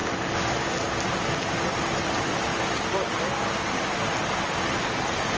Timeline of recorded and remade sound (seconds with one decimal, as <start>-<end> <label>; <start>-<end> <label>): 0.0-5.4 recorded